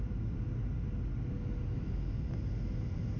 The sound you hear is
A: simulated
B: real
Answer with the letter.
B